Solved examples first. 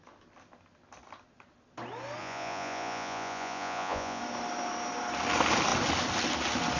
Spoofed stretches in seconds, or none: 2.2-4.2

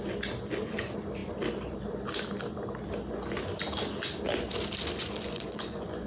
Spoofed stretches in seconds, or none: 5.0-6.1

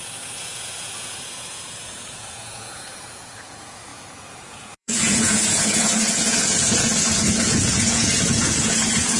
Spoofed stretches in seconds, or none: 0.0-9.2

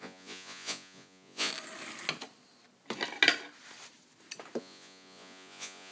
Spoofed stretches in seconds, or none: 0.0-1.5; 4.6-5.9

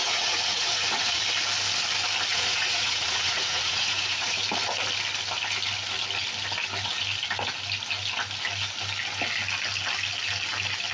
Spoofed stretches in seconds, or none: 0.0-1.2; 2.3-4.4

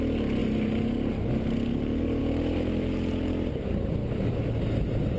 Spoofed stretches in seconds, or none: none

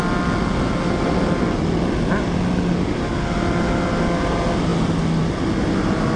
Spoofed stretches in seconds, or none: none